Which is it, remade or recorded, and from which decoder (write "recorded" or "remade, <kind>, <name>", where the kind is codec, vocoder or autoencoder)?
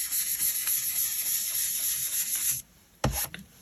recorded